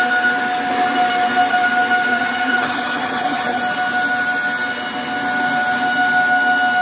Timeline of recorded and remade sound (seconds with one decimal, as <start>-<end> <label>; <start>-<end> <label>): 0.0-2.1 recorded; 2.1-3.6 remade; 3.6-6.8 recorded